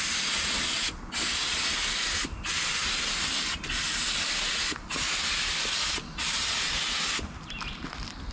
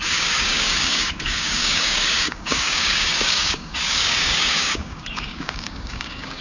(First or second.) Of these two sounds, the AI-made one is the second